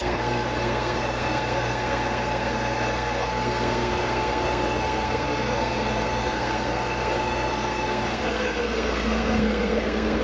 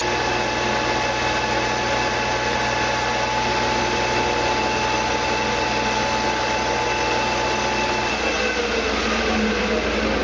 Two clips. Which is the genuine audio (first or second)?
second